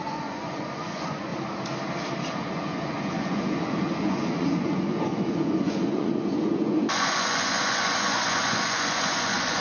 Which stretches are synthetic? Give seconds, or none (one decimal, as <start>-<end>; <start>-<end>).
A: 0.0-1.3; 2.4-9.6